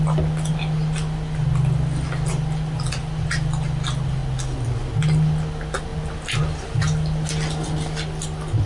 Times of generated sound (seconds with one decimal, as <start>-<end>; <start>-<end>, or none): none